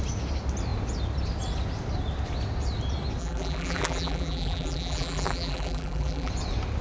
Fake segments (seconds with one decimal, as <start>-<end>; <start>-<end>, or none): 3.2-6.3

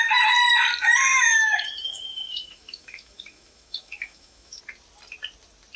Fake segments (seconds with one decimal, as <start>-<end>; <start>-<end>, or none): 1.1-4.6

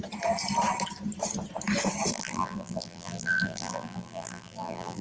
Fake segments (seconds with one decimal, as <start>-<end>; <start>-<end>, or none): 2.1-5.0

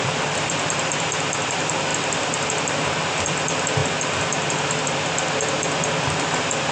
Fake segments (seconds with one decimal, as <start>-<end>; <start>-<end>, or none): none

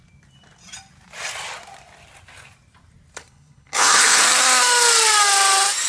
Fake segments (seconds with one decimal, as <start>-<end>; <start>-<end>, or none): 3.2-4.2

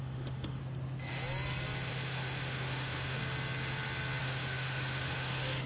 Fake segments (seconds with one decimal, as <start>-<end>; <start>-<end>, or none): 0.0-0.6; 1.9-3.2; 4.2-5.7

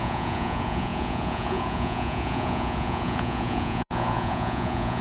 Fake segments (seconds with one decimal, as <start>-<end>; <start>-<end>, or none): 0.0-5.0

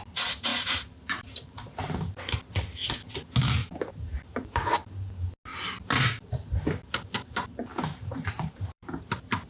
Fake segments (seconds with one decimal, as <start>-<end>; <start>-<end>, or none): 0.5-2.4; 3.6-4.4; 7.7-9.0